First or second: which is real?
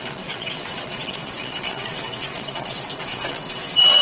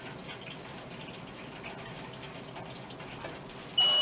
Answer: second